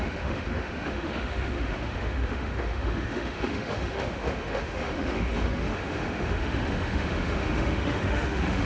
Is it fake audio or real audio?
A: fake